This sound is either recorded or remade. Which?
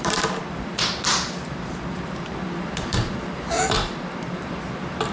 remade